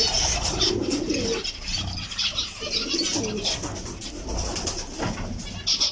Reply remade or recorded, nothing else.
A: recorded